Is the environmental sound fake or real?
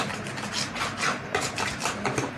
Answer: real